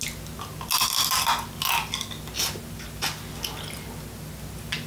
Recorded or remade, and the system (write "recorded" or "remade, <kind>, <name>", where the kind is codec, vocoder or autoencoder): recorded